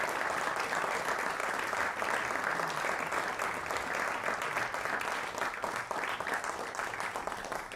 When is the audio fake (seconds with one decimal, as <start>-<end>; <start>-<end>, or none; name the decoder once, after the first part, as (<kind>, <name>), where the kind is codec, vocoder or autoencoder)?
none